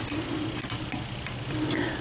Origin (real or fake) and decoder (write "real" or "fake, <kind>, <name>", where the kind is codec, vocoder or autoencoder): real